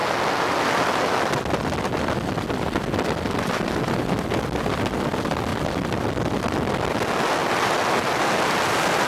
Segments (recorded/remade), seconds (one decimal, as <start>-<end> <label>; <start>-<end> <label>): 0.0-9.1 recorded